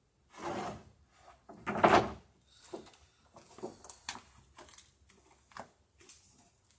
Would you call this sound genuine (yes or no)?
yes